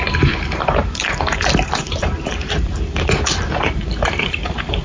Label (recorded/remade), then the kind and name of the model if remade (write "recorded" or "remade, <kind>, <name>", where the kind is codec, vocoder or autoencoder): remade, vocoder, BigVGAN v2